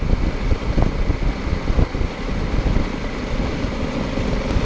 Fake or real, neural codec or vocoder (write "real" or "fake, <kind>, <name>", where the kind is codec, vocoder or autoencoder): real